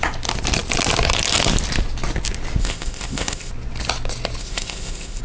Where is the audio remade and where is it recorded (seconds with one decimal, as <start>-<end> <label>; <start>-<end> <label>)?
0.0-2.6 recorded; 2.6-3.5 remade; 3.5-4.4 recorded; 4.4-5.2 remade